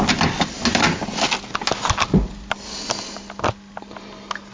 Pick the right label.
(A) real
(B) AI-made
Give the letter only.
A